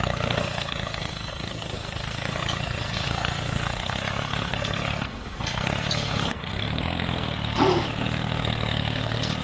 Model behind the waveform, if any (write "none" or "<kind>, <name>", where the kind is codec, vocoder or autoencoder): codec, SNAC